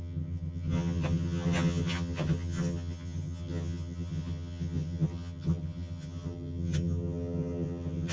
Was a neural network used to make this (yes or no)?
yes